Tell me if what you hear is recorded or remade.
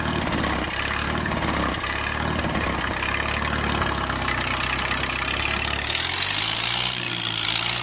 recorded